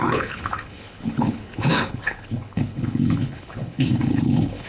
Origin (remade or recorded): remade